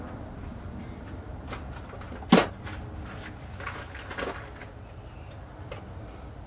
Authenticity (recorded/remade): recorded